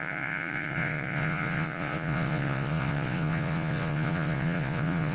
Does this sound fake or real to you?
fake